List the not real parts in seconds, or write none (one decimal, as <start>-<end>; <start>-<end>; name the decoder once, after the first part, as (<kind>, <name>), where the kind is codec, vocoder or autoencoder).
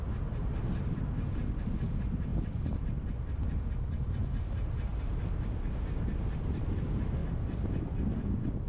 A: none